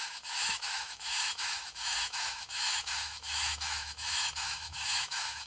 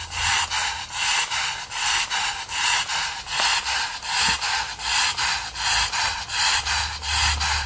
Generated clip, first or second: first